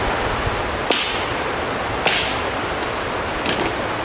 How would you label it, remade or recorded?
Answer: recorded